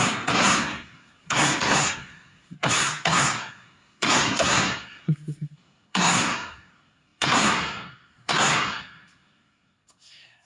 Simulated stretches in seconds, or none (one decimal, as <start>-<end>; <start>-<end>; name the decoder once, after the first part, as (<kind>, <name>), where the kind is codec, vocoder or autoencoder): 0.0-10.5 (codec, SNAC)